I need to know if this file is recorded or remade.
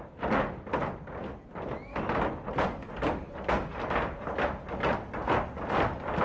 recorded